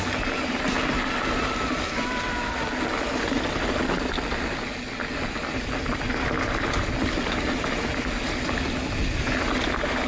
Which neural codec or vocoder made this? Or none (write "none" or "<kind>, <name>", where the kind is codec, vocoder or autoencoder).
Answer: none